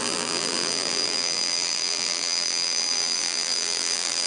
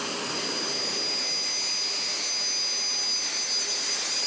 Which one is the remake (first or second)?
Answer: first